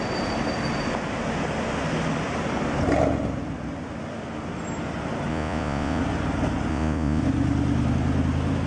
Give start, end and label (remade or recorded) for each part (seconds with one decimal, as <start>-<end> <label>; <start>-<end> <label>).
0.0-5.3 recorded; 5.3-6.0 remade; 6.0-6.7 recorded; 6.7-7.2 remade; 7.2-8.7 recorded